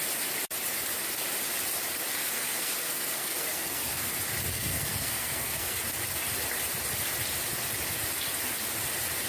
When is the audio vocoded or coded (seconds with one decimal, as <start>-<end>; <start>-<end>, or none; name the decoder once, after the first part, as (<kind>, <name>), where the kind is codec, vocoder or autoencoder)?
2.2-4.1 (codec, SNAC); 4.5-5.8